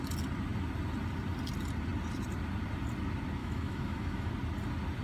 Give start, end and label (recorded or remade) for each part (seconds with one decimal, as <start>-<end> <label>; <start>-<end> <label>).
0.0-3.4 recorded; 3.4-4.3 remade; 4.3-5.0 recorded